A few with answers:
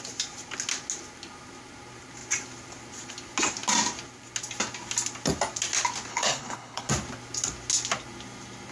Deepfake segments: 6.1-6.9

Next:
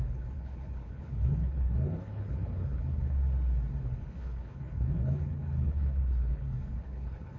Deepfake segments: 0.0-3.2; 3.8-7.4

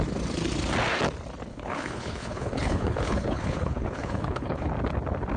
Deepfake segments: 1.5-4.7

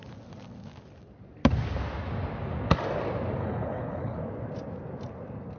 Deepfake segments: 3.4-4.2

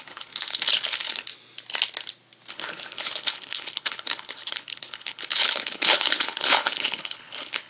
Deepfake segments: 0.0-1.3; 2.5-7.7

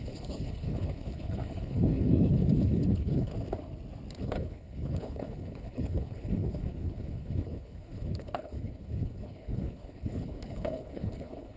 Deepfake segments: 0.0-3.3; 4.2-11.6

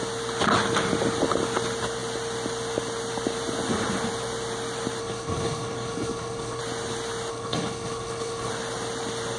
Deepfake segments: 5.0-6.6; 7.3-8.5

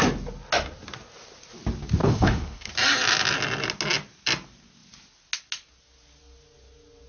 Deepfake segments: 2.0-2.7